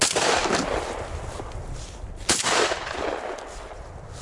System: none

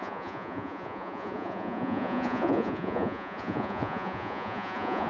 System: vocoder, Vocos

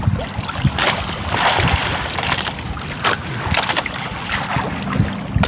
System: none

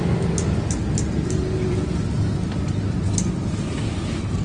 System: none